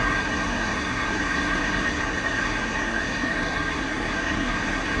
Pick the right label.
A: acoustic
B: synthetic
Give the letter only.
B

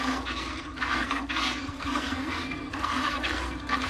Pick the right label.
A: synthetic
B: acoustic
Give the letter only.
A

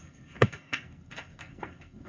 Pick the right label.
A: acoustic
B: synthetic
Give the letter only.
B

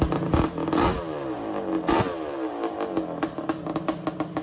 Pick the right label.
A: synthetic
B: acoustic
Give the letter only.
B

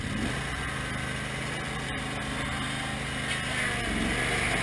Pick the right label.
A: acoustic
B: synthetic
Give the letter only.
A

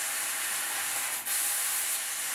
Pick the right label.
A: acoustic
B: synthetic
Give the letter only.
A